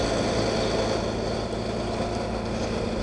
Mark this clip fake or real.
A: real